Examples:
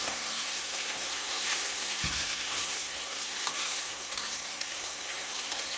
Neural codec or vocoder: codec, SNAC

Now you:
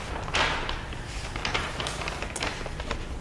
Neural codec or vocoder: none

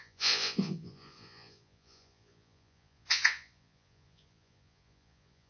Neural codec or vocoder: vocoder, Vocos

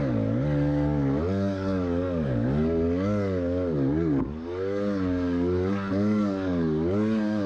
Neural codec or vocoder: codec, DAC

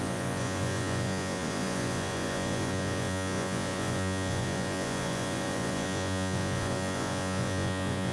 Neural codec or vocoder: vocoder, Vocos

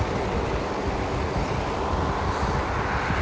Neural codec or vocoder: none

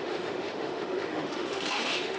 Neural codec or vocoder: autoencoder, DAC-VAE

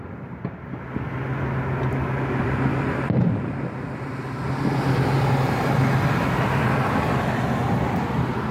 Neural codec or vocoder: none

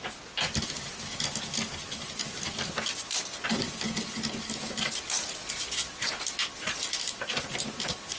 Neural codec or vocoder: none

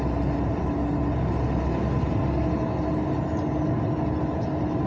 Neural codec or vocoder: none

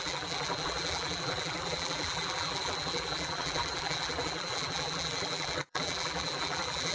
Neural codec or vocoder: vocoder, BigVGAN v2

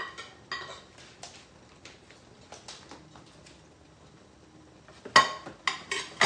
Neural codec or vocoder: none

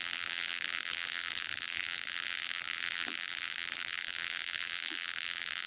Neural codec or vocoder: vocoder, BigVGAN v2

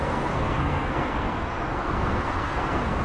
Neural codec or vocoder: codec, SNAC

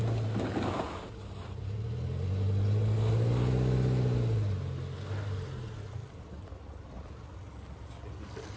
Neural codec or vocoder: none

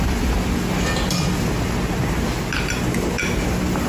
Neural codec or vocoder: none